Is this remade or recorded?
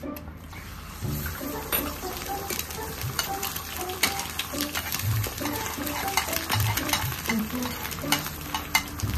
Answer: remade